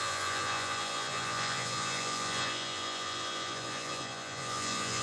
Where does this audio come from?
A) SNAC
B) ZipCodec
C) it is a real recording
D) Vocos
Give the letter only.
D